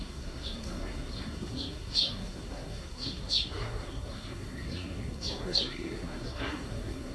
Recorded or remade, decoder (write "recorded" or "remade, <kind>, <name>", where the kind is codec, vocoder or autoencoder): remade, codec, SNAC